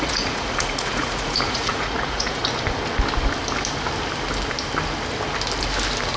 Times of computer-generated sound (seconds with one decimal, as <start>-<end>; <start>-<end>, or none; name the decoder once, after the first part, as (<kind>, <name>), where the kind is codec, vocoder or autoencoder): 0.0-2.4 (vocoder, Vocos)